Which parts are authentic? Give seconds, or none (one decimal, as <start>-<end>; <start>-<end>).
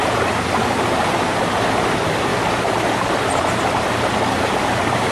0.0-5.1